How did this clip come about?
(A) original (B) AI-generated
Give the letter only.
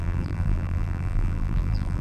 B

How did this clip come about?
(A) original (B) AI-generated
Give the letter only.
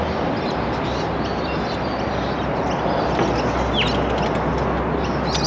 A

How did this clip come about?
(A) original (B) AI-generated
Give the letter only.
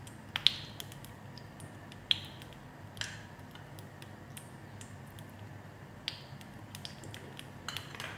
A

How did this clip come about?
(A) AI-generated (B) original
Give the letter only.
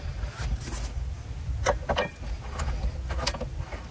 B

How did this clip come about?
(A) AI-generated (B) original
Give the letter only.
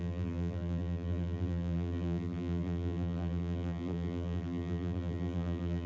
A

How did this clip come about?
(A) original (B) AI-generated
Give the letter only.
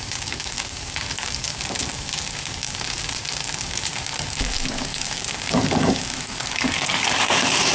B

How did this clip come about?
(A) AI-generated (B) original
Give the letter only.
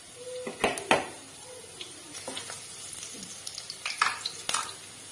B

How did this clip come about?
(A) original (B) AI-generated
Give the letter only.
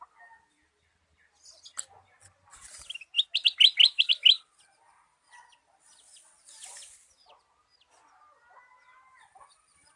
A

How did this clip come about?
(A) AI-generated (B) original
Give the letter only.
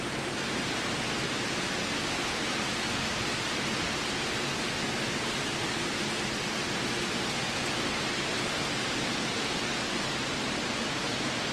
B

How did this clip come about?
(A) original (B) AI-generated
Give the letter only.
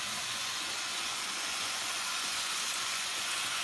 B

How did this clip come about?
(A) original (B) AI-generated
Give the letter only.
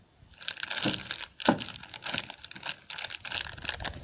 A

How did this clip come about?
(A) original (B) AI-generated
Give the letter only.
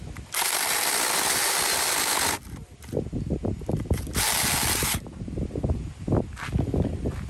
A